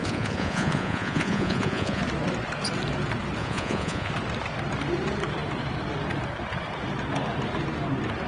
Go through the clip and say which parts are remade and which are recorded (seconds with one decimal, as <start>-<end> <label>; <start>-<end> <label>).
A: 0.0-2.0 remade; 2.0-3.4 recorded; 3.4-4.1 remade; 4.1-8.3 recorded